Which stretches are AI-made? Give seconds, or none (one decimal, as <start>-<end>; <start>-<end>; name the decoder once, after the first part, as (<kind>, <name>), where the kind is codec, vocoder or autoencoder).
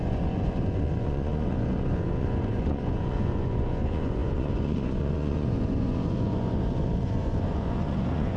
0.0-8.4 (vocoder, Vocos)